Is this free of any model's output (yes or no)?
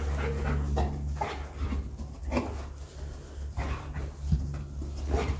yes